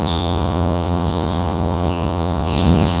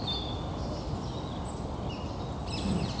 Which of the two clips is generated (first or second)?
first